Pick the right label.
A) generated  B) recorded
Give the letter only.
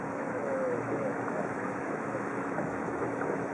A